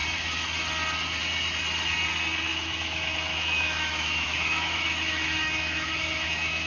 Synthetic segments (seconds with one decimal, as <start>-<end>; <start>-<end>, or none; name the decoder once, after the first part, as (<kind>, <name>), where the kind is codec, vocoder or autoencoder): 2.5-6.7 (autoencoder, DAC-VAE)